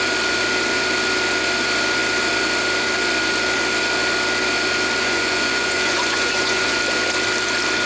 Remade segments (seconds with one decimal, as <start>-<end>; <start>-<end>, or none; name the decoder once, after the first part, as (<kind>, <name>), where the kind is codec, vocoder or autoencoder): 5.0-6.8 (vocoder, Vocos)

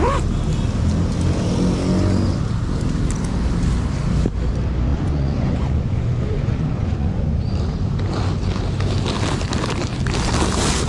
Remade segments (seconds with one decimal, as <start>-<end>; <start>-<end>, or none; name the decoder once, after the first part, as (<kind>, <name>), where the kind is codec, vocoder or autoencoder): 4.9-7.2 (vocoder, Vocos)

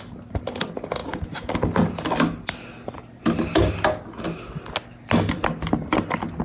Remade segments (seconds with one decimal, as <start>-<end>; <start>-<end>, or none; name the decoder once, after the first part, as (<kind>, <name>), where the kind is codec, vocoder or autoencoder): none

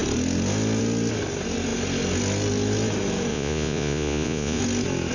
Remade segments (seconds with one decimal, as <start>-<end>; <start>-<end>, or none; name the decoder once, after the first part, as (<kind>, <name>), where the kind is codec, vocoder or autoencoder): 3.3-4.6 (vocoder, Vocos)

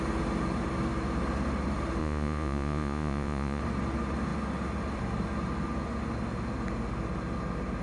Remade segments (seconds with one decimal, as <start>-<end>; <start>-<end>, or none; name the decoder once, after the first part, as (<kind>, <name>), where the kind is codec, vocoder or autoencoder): 2.0-3.6 (vocoder, Vocos)

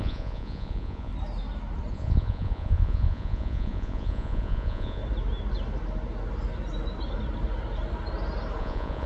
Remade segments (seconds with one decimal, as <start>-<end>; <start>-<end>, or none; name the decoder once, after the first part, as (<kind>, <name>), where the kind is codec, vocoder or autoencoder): 0.0-1.1 (vocoder, Vocos); 1.9-5.0; 8.6-9.1

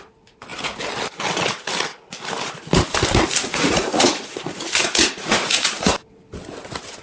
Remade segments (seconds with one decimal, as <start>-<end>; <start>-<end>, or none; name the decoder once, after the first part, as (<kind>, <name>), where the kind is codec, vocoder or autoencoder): 3.5-5.9 (vocoder, Vocos)

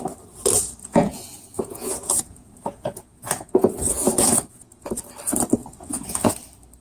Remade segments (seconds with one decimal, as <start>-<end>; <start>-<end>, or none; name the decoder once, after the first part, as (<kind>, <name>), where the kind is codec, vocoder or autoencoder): 0.8-4.9 (vocoder, Vocos); 5.6-6.3